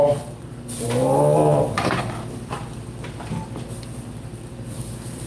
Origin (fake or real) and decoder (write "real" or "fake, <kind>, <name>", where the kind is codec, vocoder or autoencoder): fake, vocoder, BigVGAN v2